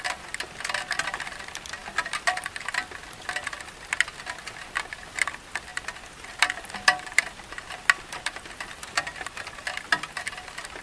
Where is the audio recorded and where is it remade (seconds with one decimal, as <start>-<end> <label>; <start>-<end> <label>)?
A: 0.0-10.8 recorded